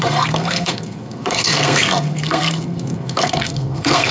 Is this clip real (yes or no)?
no